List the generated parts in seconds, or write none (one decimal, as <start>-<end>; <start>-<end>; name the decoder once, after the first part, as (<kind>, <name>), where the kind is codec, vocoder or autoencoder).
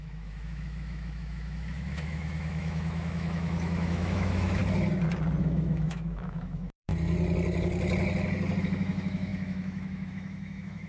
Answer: 0.0-4.6 (autoencoder, DAC-VAE); 5.4-6.9; 8.6-10.9